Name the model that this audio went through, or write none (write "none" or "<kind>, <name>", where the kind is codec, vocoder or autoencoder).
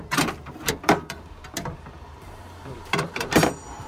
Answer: vocoder, BigVGAN v2